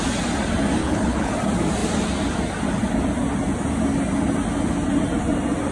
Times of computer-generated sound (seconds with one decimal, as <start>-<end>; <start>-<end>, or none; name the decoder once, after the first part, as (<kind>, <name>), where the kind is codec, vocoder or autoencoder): 0.8-1.3 (codec, HILCodec)